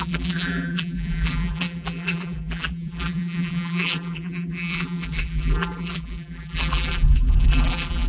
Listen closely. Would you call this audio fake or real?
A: fake